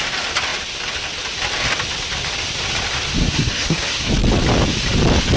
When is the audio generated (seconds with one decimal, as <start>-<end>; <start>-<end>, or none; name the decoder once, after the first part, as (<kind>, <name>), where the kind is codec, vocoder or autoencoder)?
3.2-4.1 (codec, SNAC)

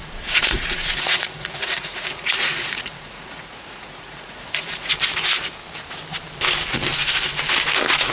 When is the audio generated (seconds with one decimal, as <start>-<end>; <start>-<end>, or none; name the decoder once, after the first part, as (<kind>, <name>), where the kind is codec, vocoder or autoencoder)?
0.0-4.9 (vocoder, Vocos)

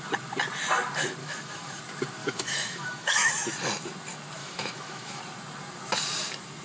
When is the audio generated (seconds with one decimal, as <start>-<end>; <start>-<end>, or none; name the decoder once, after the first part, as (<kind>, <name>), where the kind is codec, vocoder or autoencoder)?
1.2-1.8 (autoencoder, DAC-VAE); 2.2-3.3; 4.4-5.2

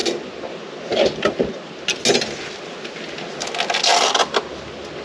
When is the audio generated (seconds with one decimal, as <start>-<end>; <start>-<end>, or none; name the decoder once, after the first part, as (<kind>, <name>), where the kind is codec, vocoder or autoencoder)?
none

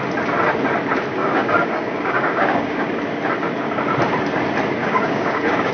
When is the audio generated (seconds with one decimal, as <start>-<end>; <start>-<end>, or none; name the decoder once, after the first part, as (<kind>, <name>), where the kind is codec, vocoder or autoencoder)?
1.2-3.0 (codec, DAC); 4.8-5.7

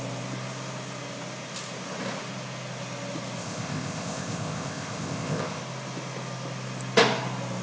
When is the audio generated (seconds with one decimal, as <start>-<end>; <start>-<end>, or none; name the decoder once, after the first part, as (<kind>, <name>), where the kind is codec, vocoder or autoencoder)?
3.4-5.6 (codec, ZipCodec)